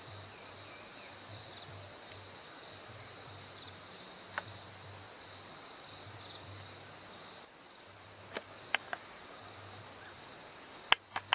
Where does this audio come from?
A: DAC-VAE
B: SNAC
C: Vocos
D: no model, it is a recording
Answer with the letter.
D